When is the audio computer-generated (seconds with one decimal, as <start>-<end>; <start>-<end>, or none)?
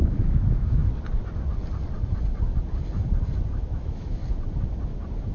0.0-0.8; 3.5-4.2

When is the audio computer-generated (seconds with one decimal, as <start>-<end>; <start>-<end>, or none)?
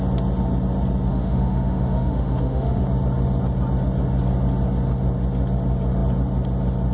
1.1-2.8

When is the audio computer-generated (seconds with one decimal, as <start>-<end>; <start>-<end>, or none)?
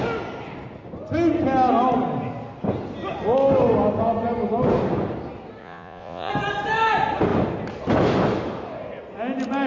5.6-6.3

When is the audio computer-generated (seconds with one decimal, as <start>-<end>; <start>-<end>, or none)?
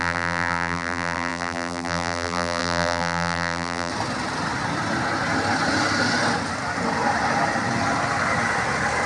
0.0-3.9